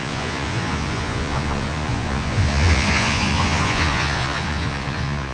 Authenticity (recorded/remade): remade